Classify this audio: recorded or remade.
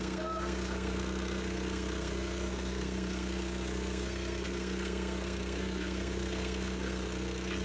remade